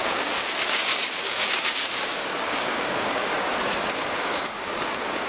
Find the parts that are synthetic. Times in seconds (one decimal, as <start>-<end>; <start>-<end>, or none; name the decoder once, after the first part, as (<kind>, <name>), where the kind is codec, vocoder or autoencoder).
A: 0.0-3.3 (codec, DAC); 3.9-5.3